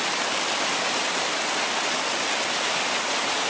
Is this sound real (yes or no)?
yes